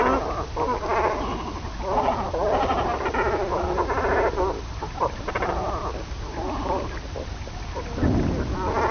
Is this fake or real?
real